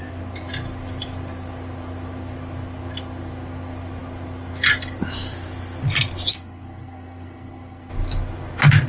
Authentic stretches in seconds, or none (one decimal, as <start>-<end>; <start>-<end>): 0.0-6.3; 7.9-8.9